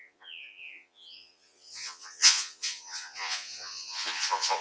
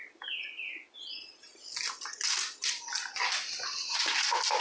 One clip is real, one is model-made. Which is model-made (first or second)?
first